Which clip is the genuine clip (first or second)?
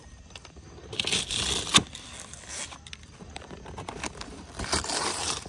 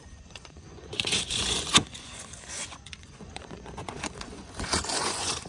first